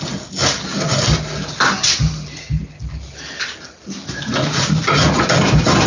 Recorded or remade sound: recorded